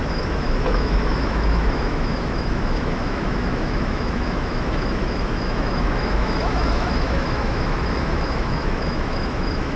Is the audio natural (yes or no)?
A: no